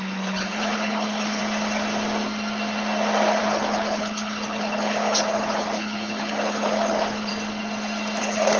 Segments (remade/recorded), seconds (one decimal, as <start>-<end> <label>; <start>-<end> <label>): 0.0-1.4 remade; 1.4-3.4 recorded; 3.4-7.3 remade; 7.3-8.2 recorded; 8.2-8.6 remade